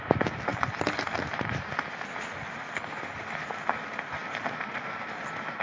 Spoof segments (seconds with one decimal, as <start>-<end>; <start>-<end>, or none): none